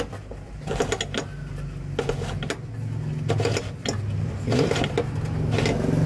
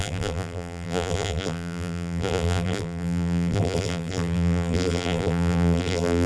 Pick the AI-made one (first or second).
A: second